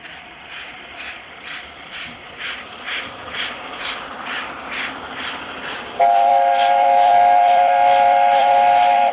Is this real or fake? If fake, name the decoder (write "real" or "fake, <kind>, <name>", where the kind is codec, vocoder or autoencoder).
fake, vocoder, BigVGAN v2